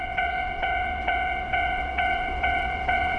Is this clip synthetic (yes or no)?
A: yes